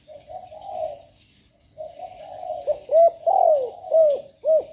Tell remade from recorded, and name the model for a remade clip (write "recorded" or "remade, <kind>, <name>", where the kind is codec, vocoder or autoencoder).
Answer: recorded